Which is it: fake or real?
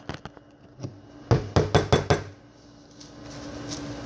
real